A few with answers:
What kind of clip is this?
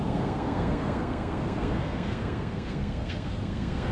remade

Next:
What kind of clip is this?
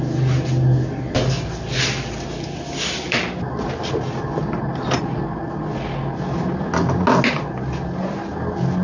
recorded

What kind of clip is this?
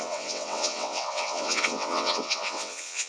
remade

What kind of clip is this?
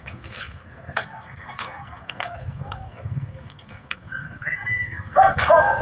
remade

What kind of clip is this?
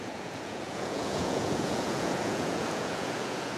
remade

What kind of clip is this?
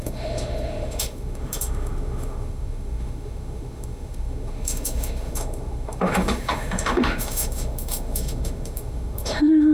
remade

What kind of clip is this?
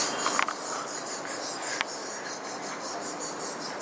recorded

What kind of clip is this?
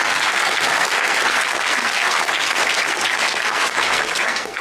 remade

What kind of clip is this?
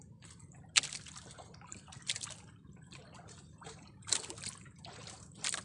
recorded